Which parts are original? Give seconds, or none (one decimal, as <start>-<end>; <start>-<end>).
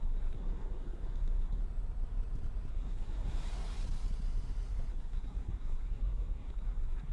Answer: 1.6-2.7; 3.5-4.9